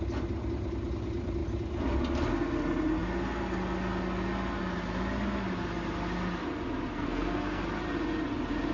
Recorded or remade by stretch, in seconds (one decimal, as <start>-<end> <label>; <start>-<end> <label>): 0.0-6.9 recorded; 6.9-7.6 remade; 7.6-8.7 recorded